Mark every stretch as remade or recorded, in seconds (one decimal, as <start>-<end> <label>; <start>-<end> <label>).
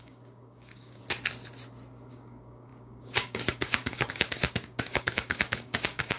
0.0-1.0 remade; 1.0-2.1 recorded; 2.1-6.2 remade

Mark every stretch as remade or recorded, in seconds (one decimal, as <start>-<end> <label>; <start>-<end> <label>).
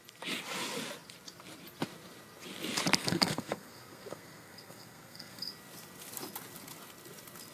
0.0-3.0 recorded; 3.0-5.5 remade; 5.5-7.5 recorded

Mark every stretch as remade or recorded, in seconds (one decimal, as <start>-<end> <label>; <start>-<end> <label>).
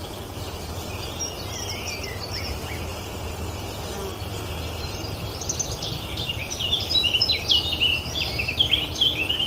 0.0-9.5 recorded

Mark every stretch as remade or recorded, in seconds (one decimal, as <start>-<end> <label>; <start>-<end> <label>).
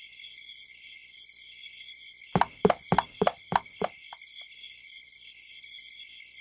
0.0-6.4 recorded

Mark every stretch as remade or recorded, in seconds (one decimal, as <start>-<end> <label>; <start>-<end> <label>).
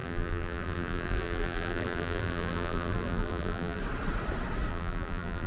0.0-3.8 remade; 3.8-4.7 recorded; 4.7-5.5 remade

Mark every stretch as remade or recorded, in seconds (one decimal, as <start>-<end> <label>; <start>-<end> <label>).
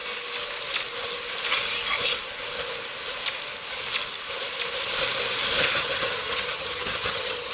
0.0-5.6 recorded; 5.6-7.5 remade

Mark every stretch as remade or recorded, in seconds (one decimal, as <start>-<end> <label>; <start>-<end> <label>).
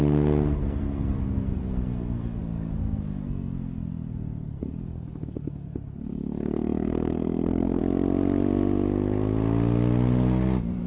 0.0-7.8 remade; 7.8-10.9 recorded